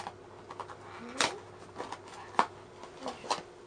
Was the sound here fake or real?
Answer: real